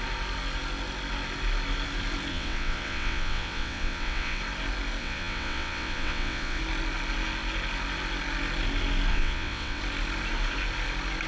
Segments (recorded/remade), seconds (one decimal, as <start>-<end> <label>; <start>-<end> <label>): 0.0-2.3 recorded; 2.3-4.4 remade; 4.4-5.0 recorded; 5.0-6.6 remade; 6.6-9.1 recorded; 9.1-9.8 remade; 9.8-11.3 recorded